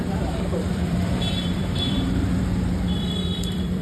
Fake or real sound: fake